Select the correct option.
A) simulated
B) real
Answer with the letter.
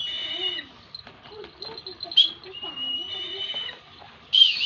A